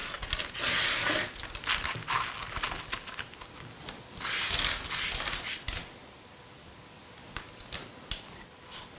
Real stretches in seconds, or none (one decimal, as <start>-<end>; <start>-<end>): 0.0-9.0